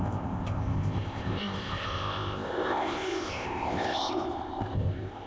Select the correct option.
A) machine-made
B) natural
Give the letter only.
A